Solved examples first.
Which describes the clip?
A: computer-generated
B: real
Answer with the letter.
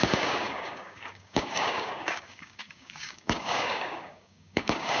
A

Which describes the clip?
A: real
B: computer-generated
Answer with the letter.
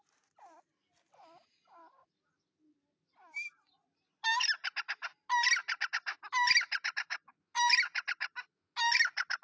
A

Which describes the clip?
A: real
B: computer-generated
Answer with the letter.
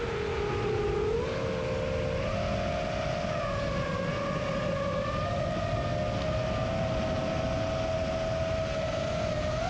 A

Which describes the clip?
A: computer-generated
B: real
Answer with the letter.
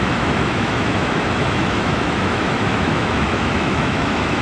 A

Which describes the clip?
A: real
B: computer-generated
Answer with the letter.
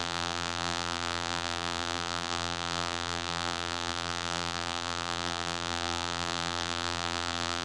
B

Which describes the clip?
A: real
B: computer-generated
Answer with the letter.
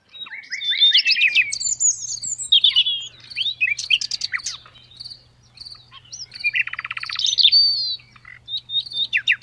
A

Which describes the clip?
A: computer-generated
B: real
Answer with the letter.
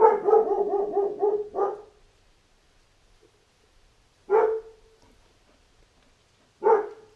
B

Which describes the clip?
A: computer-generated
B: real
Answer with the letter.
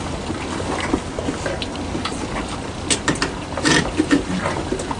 B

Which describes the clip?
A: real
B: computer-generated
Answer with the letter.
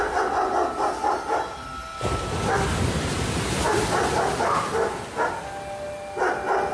A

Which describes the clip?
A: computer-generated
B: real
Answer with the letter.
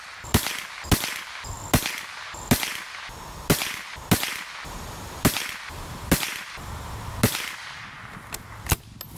B